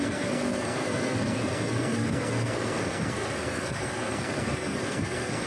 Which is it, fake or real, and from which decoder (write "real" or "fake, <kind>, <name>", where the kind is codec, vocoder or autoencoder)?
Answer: fake, codec, SNAC